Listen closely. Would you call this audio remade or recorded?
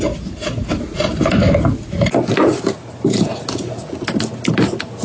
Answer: recorded